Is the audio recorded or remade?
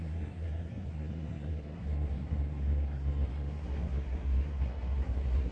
remade